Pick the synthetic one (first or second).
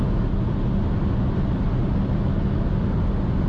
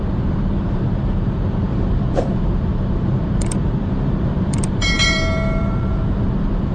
second